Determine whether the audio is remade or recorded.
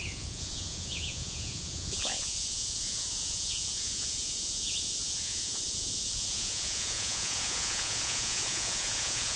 remade